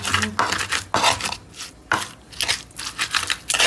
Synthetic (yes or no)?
no